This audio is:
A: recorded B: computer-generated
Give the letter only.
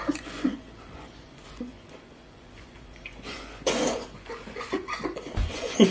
B